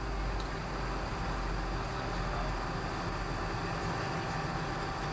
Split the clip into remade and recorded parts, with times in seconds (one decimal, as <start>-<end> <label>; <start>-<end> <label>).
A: 0.0-5.1 recorded